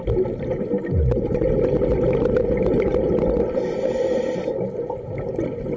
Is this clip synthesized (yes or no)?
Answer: no